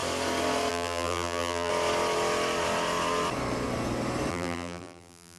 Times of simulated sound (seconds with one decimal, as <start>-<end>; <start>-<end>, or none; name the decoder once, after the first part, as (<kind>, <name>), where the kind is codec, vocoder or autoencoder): 0.7-1.7 (vocoder, BigVGAN v2); 4.3-5.4